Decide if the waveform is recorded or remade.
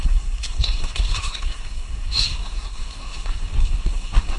remade